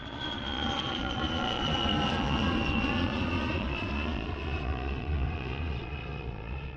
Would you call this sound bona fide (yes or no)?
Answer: no